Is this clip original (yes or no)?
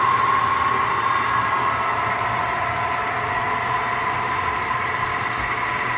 yes